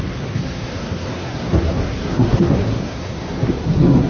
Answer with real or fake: fake